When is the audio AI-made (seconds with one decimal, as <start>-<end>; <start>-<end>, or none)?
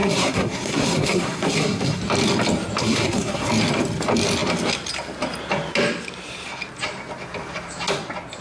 0.0-2.0; 2.8-3.5